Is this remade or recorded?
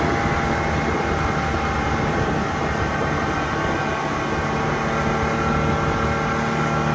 recorded